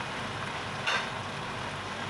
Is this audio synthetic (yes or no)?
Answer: no